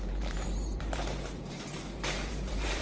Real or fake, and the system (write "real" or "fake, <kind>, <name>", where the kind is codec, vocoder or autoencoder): fake, vocoder, BigVGAN v2